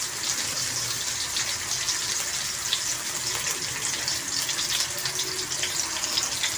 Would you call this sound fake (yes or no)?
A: no